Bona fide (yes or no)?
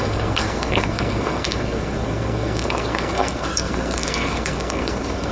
no